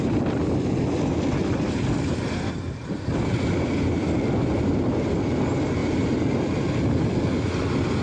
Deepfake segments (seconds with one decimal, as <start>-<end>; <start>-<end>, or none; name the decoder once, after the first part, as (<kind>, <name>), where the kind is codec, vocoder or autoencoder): none